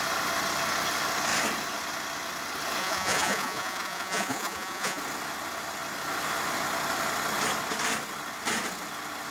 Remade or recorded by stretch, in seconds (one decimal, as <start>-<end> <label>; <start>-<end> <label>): 0.0-2.8 recorded; 2.8-5.0 remade; 5.0-9.3 recorded